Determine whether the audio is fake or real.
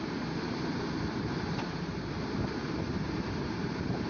fake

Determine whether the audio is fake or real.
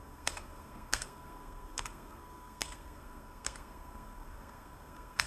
fake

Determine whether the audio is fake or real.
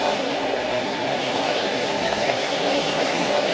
fake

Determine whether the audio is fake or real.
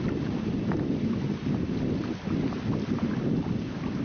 real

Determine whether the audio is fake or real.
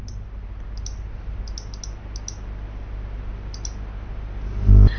real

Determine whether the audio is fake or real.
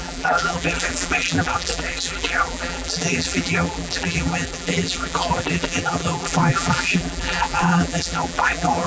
fake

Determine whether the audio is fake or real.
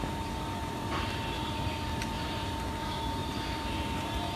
fake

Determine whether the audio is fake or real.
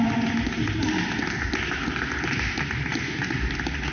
real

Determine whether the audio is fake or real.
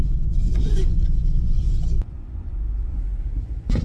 fake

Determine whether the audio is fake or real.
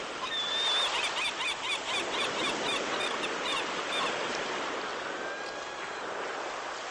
real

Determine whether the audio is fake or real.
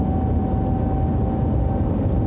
real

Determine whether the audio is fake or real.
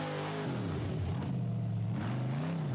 real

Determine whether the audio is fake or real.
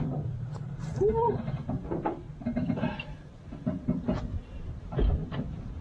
fake